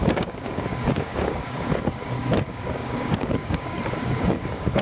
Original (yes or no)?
no